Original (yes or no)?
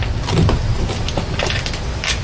yes